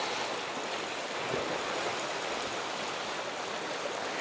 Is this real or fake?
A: real